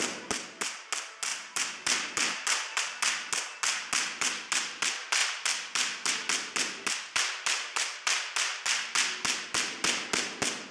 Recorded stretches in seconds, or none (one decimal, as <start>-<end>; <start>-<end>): 0.0-1.3; 2.8-5.2; 6.1-10.7